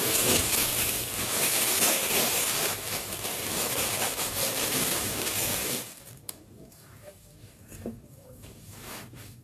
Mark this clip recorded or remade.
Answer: remade